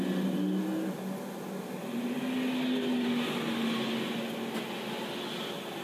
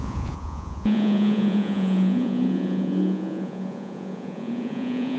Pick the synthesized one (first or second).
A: second